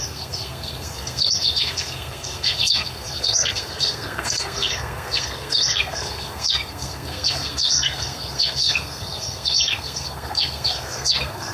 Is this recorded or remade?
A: remade